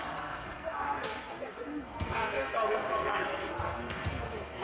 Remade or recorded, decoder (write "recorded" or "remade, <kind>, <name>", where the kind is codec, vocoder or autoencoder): remade, codec, SNAC